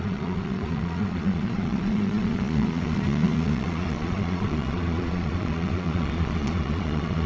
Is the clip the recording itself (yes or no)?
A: no